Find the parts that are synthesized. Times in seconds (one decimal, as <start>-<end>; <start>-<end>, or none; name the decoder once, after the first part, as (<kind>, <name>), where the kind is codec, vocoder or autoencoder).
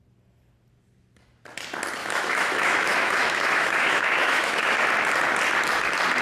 2.0-4.9 (autoencoder, DAC-VAE)